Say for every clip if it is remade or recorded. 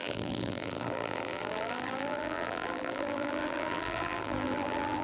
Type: remade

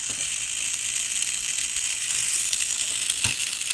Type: recorded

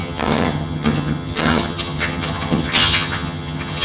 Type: remade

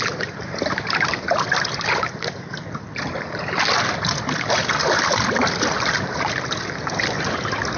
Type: recorded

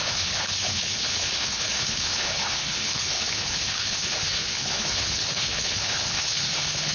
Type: remade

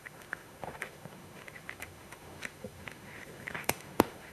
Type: remade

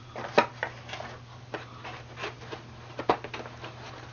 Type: recorded